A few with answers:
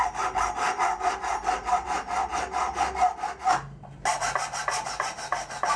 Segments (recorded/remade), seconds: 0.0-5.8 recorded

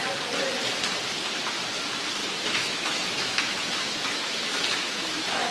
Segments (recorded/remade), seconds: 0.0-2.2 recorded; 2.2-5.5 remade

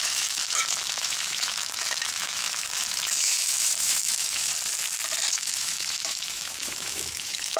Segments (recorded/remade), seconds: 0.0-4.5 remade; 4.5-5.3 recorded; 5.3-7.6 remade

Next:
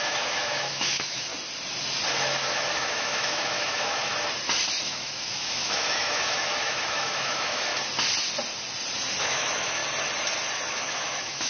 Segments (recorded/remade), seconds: 0.0-1.3 remade; 1.3-2.1 recorded; 2.1-4.1 remade; 4.1-4.8 recorded; 4.8-7.7 remade; 7.7-9.2 recorded; 9.2-9.8 remade; 9.8-10.7 recorded; 10.7-11.5 remade

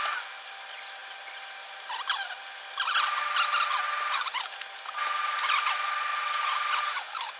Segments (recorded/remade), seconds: 0.0-7.4 recorded

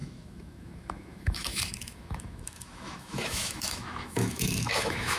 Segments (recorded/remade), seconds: 0.0-5.2 remade

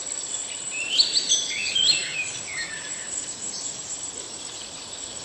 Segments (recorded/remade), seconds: 0.0-5.2 recorded

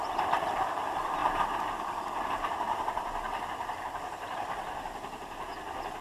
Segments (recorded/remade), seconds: 0.0-6.0 recorded